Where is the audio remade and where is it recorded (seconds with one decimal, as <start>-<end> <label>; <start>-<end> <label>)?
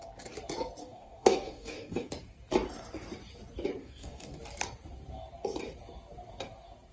0.0-0.8 recorded; 0.8-2.1 remade; 2.1-3.8 recorded; 3.8-4.3 remade; 4.3-6.9 recorded